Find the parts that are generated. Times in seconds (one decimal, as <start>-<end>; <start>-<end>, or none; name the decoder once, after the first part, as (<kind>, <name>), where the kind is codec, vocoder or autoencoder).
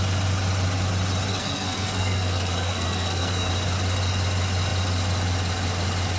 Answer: 1.3-3.5 (codec, SNAC)